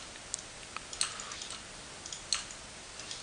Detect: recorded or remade recorded